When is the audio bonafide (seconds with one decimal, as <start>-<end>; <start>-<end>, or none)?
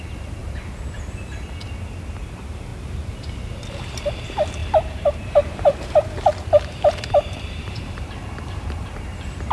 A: 0.4-2.3; 2.7-3.9